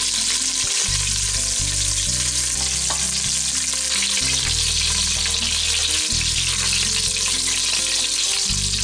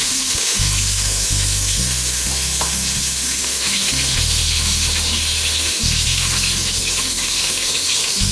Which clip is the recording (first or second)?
first